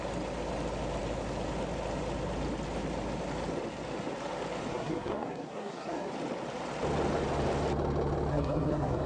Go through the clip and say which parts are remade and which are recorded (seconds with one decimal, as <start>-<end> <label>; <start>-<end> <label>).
0.0-4.7 recorded; 4.7-6.1 remade; 6.1-8.3 recorded; 8.3-9.1 remade